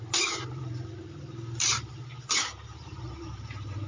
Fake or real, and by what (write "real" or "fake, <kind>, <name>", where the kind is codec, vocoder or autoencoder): fake, vocoder, BigVGAN v2